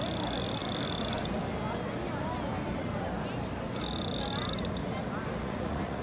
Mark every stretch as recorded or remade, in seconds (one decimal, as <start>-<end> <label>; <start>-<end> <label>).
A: 0.0-5.4 recorded; 5.4-6.0 remade